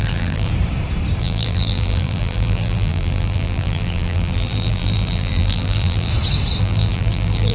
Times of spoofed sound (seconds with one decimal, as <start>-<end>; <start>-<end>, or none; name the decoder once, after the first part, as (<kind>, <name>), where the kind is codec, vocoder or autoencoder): 0.0-0.5 (vocoder, BigVGAN v2); 1.2-6.1; 6.6-7.5